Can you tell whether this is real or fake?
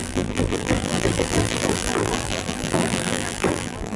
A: fake